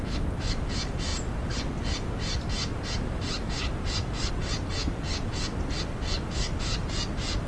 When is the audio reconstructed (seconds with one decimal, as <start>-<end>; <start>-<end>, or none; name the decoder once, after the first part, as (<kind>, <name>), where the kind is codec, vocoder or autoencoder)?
none